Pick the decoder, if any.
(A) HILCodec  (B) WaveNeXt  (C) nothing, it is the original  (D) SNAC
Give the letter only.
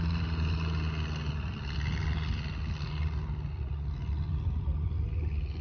C